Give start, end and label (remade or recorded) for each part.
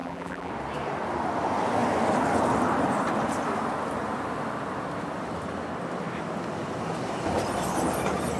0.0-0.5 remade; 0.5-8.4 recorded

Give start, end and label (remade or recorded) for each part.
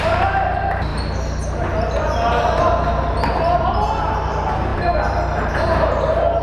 0.0-0.9 remade; 0.9-4.0 recorded; 4.0-6.4 remade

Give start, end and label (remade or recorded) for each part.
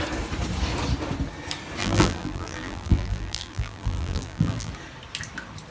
0.0-1.8 recorded; 1.8-4.7 remade; 4.7-5.7 recorded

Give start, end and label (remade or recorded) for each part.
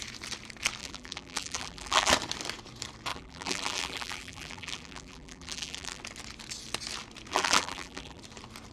0.0-0.8 recorded; 0.8-2.1 remade; 2.1-3.1 recorded; 3.1-6.0 remade; 6.0-7.3 recorded; 7.3-8.2 remade; 8.2-8.7 recorded